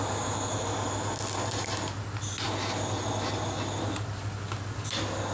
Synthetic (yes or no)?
no